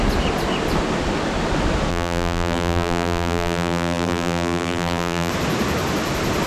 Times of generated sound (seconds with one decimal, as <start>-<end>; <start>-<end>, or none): 1.9-5.3